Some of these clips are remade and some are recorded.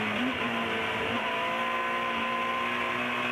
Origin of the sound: recorded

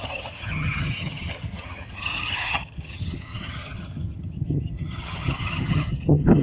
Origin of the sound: remade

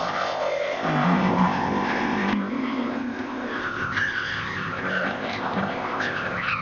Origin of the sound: remade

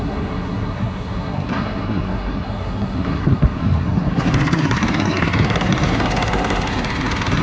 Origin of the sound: remade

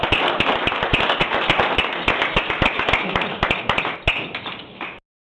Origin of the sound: recorded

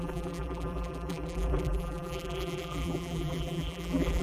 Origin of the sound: remade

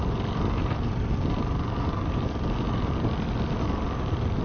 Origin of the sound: recorded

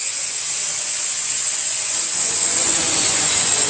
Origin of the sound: remade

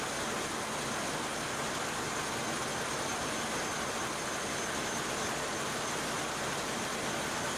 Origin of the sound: recorded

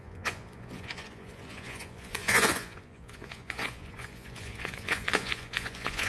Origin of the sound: remade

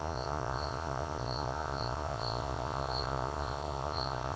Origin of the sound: remade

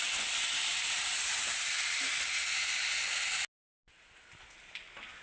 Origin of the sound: recorded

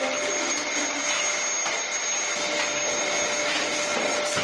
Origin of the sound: recorded